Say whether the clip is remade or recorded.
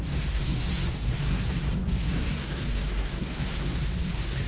remade